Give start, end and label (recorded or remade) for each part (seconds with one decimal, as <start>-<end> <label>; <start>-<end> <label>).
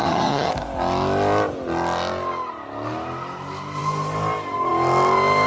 0.0-0.5 remade; 0.5-5.5 recorded